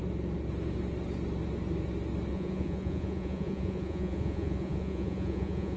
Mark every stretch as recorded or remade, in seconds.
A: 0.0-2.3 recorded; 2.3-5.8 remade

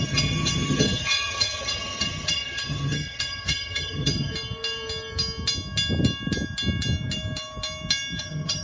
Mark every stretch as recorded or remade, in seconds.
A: 0.0-4.3 remade; 4.3-8.2 recorded; 8.2-8.6 remade

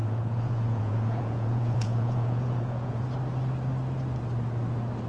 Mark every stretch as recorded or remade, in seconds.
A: 0.0-3.0 remade; 3.0-5.1 recorded

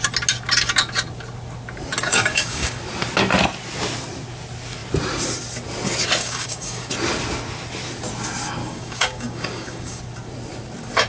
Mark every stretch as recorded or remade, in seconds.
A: 0.0-2.1 recorded; 2.1-2.8 remade; 2.8-6.2 recorded; 6.2-6.9 remade; 6.9-8.6 recorded; 8.6-10.0 remade; 10.0-11.1 recorded

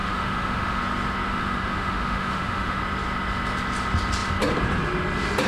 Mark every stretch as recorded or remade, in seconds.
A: 0.0-0.8 remade; 0.8-1.3 recorded; 1.3-2.8 remade; 2.8-5.5 recorded

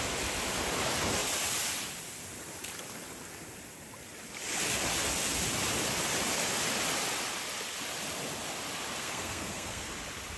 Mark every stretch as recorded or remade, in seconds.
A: 0.0-9.0 recorded; 9.0-9.9 remade; 9.9-10.4 recorded